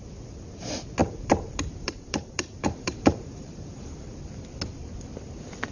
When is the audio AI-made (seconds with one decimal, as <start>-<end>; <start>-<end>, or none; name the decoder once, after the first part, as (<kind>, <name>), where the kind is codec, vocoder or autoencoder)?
1.0-4.4 (vocoder, BigVGAN v2)